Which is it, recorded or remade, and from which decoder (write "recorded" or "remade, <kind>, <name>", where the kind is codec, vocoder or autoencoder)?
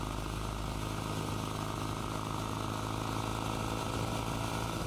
recorded